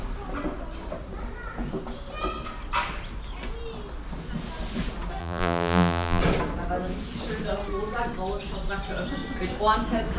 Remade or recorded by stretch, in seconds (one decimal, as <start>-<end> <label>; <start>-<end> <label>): 0.0-5.2 recorded; 5.2-6.2 remade; 6.2-10.2 recorded